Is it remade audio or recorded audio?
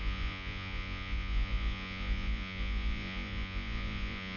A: remade